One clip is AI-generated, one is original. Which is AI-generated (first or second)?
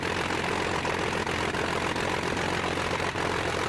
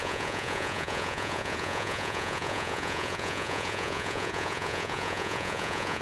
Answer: second